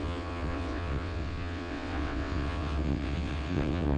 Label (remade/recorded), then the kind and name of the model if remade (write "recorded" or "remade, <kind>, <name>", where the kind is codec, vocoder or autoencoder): remade, vocoder, WaveNeXt